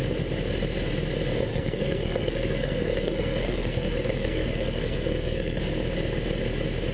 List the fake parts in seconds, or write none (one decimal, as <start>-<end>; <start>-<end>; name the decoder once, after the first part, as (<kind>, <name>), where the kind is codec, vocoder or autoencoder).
1.5-5.6 (codec, SNAC)